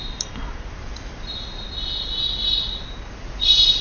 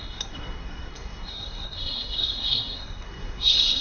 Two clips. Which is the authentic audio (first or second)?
first